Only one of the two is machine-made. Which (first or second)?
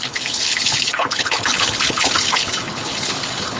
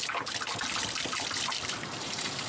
first